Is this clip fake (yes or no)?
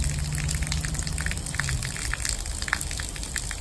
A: no